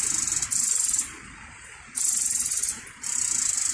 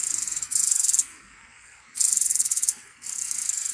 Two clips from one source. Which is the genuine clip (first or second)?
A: first